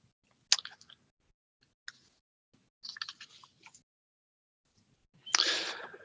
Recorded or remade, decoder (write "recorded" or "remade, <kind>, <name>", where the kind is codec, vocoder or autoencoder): recorded